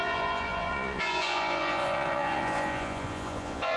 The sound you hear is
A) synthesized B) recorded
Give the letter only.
A